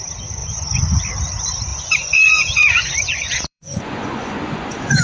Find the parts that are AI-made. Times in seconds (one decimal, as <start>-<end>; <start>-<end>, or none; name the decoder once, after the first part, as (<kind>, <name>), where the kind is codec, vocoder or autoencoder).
0.4-1.0 (vocoder, Vocos); 1.7-5.0